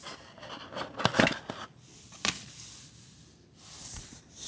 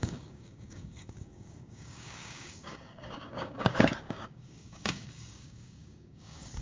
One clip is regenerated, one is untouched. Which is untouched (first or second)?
first